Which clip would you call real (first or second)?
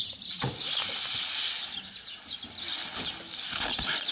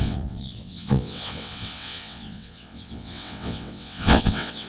first